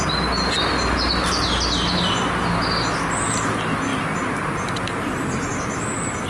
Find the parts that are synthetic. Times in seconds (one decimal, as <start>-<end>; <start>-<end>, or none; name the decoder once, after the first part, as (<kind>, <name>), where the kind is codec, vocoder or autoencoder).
none